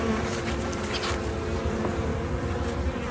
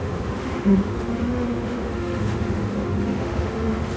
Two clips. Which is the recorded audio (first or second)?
first